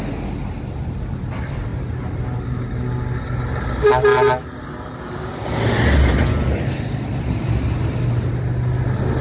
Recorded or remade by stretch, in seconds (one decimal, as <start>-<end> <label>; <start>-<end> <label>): 0.0-9.2 recorded